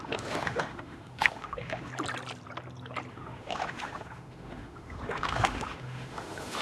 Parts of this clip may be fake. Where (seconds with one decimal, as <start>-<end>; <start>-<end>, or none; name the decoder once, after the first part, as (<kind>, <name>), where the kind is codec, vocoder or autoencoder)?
0.0-1.9 (autoencoder, DAC-VAE); 3.1-6.6